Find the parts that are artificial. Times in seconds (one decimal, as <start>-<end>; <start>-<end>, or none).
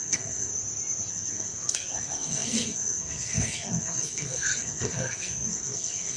0.0-0.5; 1.1-6.2